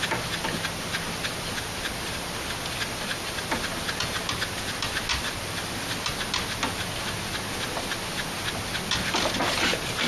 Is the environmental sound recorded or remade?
recorded